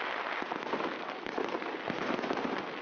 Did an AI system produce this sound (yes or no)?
no